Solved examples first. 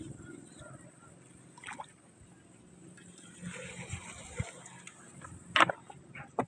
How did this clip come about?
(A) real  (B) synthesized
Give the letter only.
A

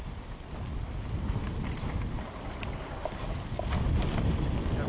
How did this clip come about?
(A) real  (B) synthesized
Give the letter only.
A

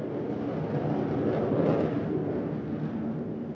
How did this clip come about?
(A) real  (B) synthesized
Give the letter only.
A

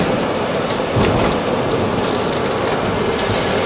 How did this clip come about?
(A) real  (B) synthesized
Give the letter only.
A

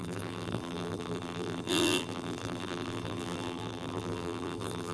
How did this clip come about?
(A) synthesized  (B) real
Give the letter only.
A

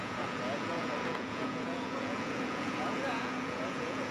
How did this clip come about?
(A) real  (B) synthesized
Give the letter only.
B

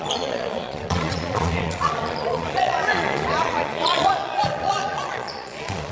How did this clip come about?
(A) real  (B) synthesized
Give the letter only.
B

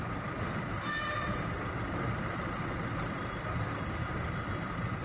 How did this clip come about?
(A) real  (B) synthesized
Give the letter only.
A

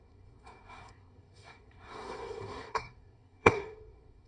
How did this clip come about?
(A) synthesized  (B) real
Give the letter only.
A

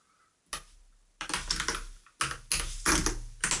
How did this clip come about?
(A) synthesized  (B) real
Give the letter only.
B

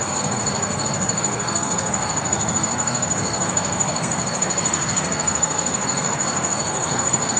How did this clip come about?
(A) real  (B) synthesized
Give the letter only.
B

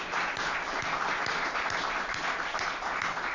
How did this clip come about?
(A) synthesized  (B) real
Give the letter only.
B